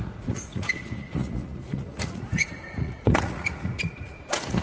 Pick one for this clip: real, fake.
fake